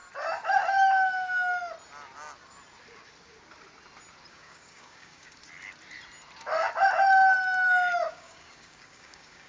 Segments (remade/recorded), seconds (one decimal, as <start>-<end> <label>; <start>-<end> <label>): 0.0-4.3 recorded; 4.3-5.4 remade; 5.4-8.1 recorded; 8.1-9.5 remade